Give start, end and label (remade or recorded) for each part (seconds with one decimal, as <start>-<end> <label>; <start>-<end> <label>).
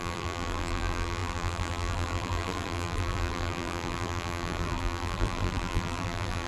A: 0.0-6.5 remade